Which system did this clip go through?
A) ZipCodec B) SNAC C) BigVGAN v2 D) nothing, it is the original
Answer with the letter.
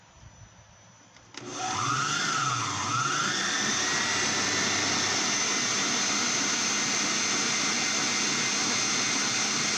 D